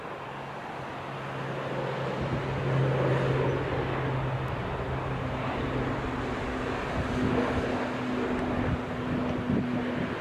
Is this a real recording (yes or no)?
yes